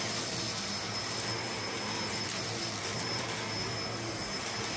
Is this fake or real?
real